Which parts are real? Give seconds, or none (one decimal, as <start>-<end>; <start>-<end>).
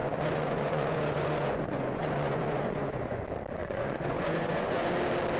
3.2-3.6; 4.9-5.4